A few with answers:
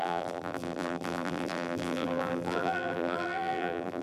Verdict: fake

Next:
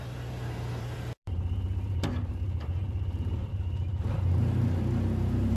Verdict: fake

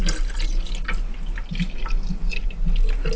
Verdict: real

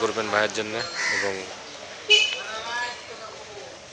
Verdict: real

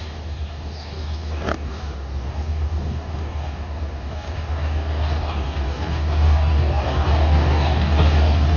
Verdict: fake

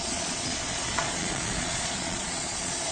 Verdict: fake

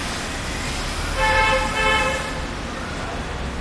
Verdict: real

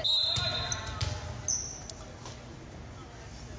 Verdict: real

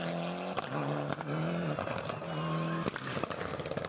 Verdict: real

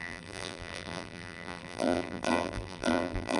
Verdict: fake